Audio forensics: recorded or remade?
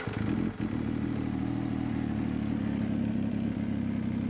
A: recorded